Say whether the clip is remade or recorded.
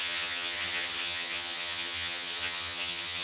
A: remade